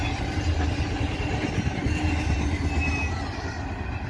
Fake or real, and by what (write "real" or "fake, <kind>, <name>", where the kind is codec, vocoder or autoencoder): real